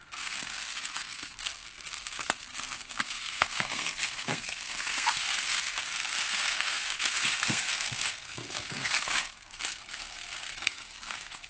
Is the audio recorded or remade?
remade